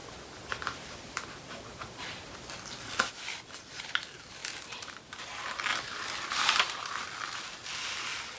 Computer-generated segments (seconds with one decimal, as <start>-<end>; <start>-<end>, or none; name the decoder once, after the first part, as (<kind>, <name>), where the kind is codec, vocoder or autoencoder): 0.0-3.0 (vocoder, BigVGAN v2); 4.4-5.2; 5.7-6.6